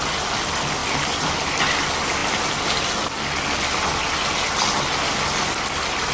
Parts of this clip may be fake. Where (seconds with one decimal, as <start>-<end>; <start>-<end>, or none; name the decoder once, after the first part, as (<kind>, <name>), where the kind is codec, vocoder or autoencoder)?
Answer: none